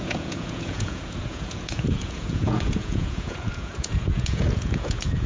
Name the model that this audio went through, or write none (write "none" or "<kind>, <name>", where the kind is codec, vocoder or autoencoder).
vocoder, Vocos